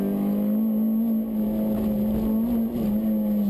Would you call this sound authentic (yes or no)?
yes